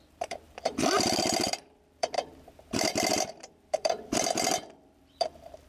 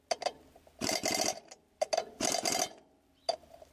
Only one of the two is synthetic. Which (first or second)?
first